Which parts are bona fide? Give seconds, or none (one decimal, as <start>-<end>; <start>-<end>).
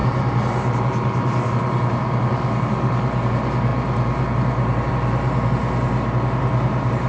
0.0-7.1